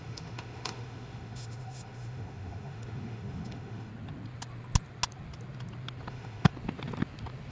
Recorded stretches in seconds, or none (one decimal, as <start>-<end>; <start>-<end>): 3.9-6.1; 6.5-7.5